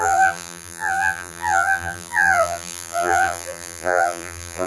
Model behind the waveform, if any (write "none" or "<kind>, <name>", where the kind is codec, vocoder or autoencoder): vocoder, BigVGAN v2